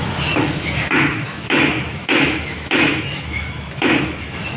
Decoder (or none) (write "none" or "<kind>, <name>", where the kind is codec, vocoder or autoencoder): autoencoder, DAC-VAE